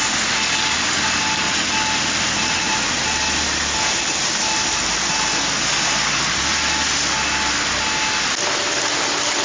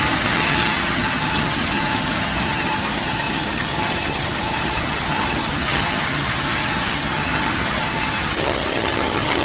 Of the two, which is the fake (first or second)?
second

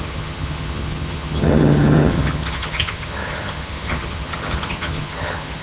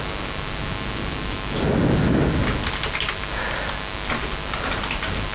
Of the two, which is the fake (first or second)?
first